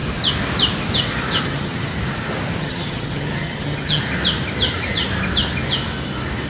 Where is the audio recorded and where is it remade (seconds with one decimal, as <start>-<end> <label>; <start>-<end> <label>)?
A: 0.0-1.4 recorded; 1.4-1.9 remade; 1.9-2.6 recorded; 2.6-4.0 remade; 4.0-6.5 recorded